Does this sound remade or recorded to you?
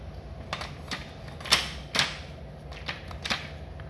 recorded